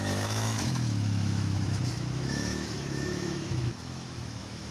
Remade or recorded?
remade